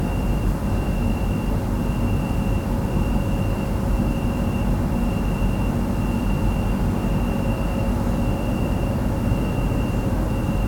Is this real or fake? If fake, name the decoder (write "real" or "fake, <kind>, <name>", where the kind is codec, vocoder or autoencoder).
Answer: real